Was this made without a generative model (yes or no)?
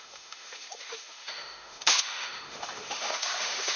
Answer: no